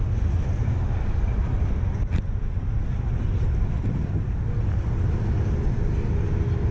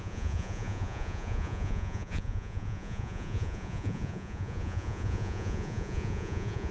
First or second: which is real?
first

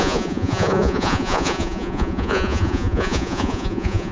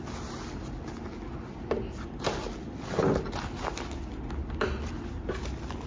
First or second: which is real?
second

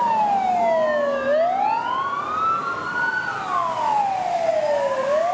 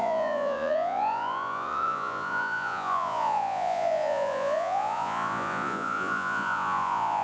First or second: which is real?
first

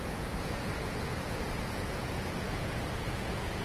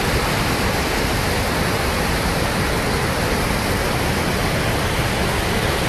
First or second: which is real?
second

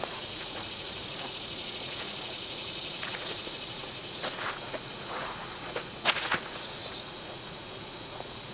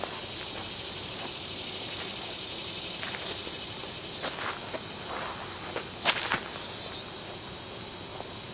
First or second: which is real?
second